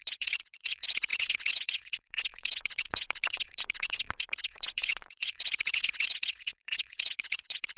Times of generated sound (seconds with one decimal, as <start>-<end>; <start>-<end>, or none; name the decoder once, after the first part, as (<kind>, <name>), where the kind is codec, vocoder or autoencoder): 0.0-7.8 (vocoder, WaveNeXt)